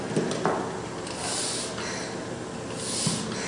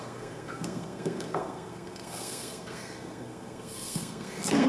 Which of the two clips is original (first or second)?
first